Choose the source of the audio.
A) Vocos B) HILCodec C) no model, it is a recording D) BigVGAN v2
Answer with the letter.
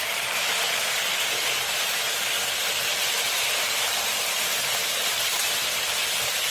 D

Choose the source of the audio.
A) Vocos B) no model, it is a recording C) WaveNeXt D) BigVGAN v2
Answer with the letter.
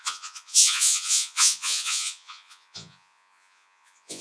A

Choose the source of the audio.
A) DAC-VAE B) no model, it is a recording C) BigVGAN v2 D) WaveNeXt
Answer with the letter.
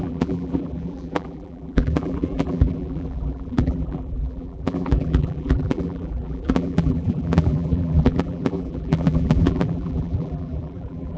C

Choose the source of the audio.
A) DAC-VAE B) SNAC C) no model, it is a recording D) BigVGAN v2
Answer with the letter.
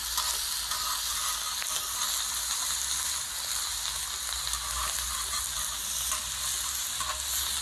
C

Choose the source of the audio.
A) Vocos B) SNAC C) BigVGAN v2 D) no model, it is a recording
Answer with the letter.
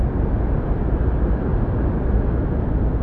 D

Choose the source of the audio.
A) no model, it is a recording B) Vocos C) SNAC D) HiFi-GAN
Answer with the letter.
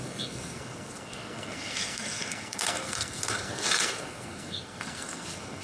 C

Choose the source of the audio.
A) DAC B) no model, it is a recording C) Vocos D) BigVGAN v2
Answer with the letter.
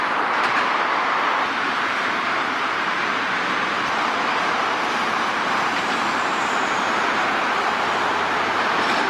D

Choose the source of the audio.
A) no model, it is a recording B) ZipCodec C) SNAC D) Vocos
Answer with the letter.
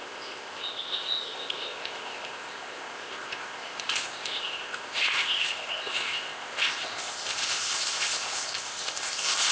B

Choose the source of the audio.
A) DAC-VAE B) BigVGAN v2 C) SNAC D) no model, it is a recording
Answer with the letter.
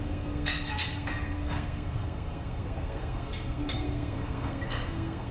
C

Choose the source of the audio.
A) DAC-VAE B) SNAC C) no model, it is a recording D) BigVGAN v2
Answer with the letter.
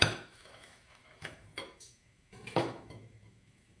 A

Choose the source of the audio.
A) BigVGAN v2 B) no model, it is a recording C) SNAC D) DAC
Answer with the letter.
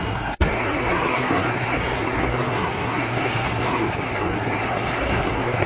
C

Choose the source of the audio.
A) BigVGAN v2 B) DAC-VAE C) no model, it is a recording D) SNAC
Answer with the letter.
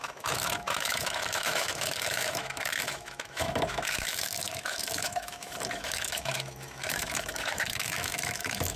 B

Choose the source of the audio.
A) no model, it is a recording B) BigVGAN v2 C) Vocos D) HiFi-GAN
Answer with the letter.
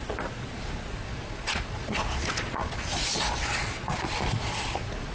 C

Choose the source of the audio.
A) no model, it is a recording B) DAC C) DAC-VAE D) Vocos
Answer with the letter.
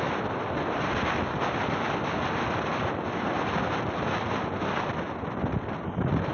A